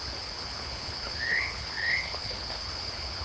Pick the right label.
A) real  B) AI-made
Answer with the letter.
B